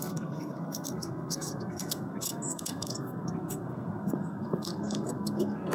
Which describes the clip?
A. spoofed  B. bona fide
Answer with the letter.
A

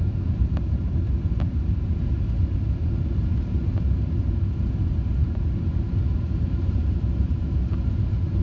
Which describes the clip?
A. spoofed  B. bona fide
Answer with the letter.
B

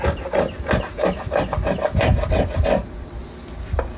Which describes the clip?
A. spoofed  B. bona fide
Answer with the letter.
B